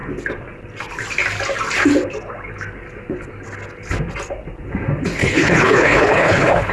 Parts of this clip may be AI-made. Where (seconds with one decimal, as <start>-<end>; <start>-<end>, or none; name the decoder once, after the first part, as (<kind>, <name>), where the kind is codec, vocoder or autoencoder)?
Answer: 5.2-6.7 (codec, HILCodec)